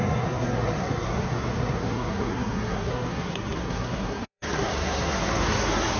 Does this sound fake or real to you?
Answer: fake